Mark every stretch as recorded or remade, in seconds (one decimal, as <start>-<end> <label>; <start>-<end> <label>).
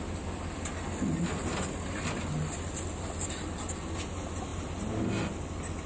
0.0-5.9 recorded